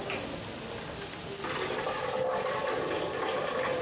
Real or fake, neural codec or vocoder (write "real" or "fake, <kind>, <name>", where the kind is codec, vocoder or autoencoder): real